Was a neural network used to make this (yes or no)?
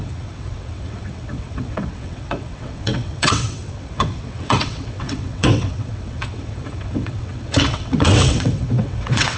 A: yes